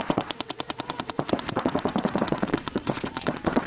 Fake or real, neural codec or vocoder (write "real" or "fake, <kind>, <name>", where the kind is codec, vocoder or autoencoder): fake, vocoder, WaveNeXt